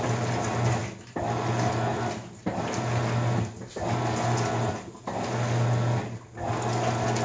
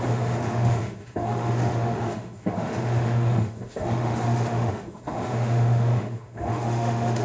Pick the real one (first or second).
first